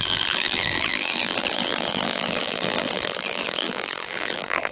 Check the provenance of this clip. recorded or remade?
remade